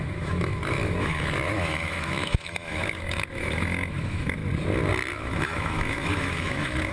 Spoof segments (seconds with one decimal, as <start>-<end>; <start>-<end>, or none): 0.0-4.4; 5.1-6.9